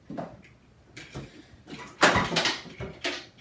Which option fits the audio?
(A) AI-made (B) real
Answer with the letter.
B